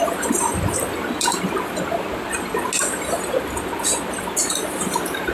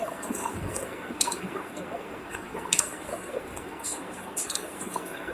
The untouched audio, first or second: first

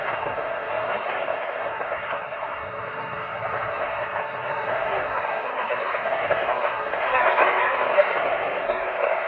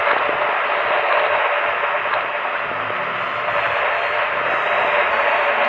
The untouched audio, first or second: second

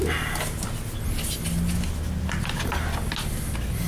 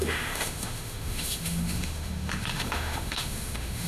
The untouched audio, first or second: first